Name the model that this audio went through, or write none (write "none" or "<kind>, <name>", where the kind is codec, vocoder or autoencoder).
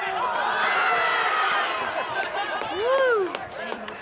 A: none